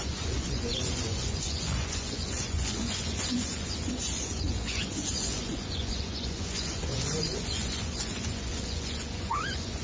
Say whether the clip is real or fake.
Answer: fake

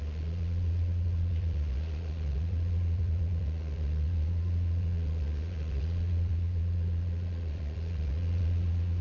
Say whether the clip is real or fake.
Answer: fake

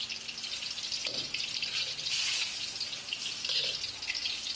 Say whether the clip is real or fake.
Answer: real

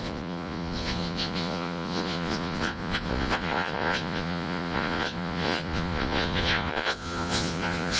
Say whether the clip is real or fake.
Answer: fake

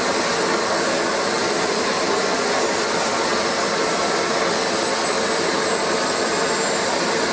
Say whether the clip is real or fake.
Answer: real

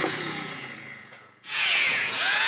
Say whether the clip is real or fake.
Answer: fake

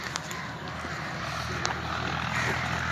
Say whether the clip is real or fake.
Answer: real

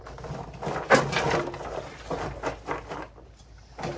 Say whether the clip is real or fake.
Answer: real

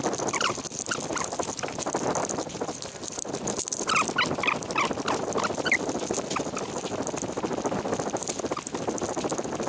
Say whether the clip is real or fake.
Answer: real